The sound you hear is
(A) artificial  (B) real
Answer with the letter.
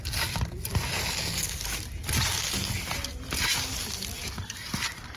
B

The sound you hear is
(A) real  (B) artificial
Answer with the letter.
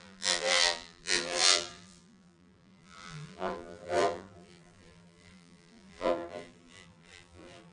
B